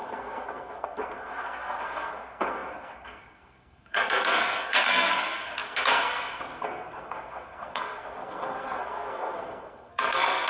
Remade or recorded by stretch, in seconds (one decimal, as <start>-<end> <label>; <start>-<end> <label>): 0.0-10.5 remade